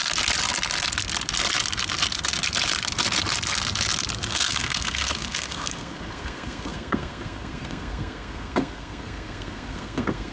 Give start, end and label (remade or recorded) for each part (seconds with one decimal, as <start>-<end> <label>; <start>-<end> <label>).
0.0-4.3 recorded; 4.3-10.3 remade